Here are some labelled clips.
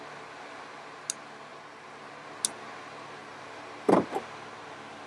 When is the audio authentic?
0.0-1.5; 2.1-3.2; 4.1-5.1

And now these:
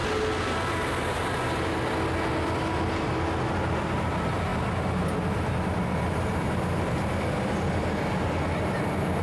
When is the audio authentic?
0.0-9.2